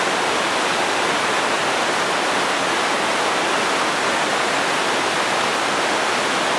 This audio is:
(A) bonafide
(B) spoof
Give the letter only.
A